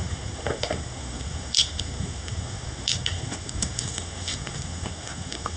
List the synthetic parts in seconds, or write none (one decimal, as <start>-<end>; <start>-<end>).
0.0-5.6